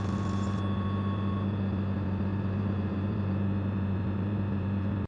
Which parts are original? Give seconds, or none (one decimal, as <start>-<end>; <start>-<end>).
0.0-2.3

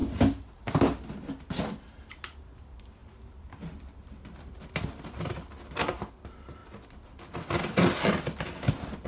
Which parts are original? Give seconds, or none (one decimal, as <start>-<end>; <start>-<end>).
0.0-2.6; 6.6-8.7

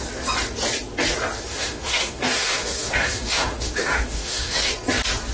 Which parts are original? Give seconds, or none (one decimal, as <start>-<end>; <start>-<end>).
0.0-1.5; 4.7-5.3

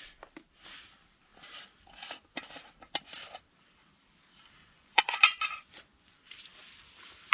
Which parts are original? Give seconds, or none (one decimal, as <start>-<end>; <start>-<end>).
0.0-4.6; 6.3-7.3

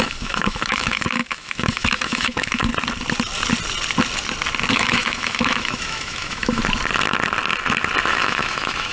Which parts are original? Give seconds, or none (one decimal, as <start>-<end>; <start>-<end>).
2.7-4.7; 6.6-8.1

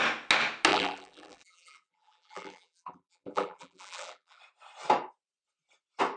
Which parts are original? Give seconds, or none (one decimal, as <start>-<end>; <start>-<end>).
0.0-0.7; 4.4-6.2

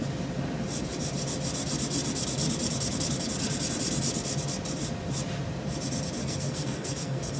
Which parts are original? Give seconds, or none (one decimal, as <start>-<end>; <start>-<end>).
0.0-6.2